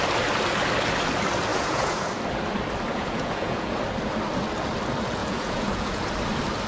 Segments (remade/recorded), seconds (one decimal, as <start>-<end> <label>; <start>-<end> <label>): 0.0-1.5 recorded; 1.5-2.1 remade; 2.1-2.9 recorded; 2.9-3.8 remade; 3.8-5.2 recorded; 5.2-6.1 remade; 6.1-6.7 recorded